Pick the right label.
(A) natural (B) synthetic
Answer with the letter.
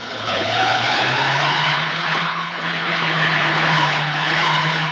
B